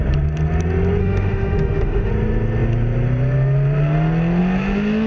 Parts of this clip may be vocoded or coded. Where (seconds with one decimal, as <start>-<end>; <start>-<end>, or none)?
1.0-2.1